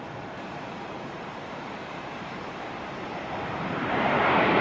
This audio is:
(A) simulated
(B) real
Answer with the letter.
A